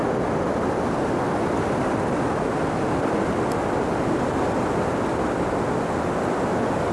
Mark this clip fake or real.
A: real